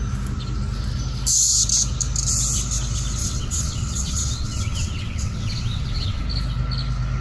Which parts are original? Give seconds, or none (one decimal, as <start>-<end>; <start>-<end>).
0.0-3.2; 6.2-7.2